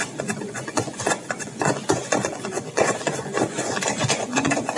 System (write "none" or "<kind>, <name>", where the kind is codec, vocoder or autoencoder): vocoder, Vocos